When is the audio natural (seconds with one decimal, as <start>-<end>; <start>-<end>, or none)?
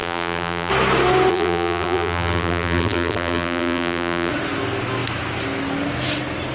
0.7-1.3; 4.3-6.5